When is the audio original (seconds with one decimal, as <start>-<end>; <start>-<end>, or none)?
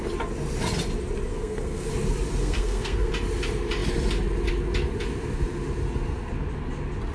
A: 0.0-1.3; 1.9-2.4; 3.1-7.1